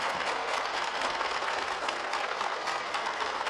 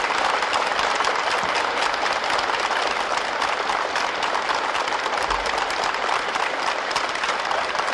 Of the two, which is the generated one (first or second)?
first